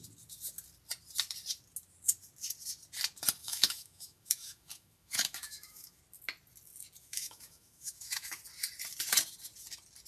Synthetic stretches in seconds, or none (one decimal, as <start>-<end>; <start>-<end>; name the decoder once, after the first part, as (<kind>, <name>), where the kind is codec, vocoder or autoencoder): 3.4-6.0 (autoencoder, DAC-VAE); 7.0-8.4